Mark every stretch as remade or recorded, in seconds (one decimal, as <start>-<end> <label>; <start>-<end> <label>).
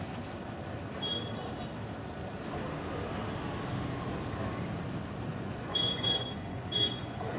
0.0-5.3 recorded; 5.3-7.4 remade